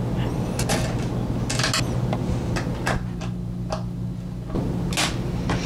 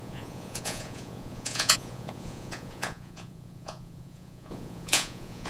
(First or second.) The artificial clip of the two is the second